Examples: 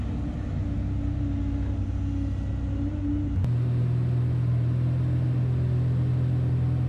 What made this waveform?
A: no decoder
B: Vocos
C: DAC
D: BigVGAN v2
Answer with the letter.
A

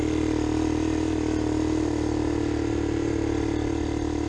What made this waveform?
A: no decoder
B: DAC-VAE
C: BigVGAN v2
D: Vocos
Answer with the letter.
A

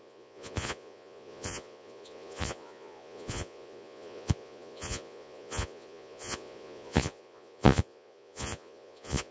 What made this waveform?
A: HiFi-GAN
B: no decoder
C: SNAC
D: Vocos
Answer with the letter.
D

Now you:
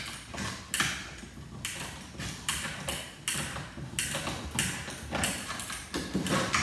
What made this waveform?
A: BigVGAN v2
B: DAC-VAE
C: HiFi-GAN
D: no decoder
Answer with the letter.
D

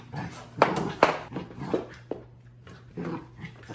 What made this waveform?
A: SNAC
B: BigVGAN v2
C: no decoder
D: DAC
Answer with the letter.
B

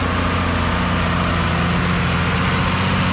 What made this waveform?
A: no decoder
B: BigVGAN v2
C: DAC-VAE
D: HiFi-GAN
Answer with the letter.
A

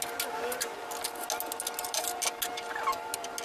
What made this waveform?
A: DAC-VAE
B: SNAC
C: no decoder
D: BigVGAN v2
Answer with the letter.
C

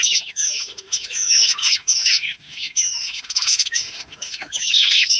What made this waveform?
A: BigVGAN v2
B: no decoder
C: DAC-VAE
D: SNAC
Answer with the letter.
C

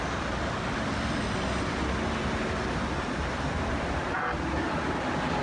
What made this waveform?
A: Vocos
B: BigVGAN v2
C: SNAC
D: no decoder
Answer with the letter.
D